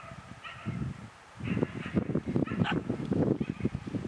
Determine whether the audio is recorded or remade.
recorded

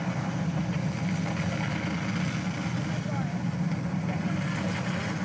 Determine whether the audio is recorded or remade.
recorded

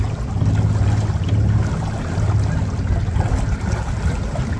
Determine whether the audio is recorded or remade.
recorded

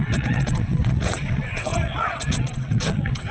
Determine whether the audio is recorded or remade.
remade